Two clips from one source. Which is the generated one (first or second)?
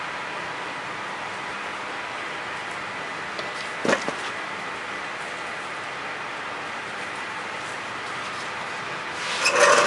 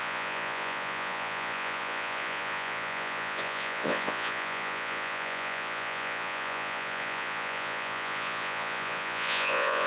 second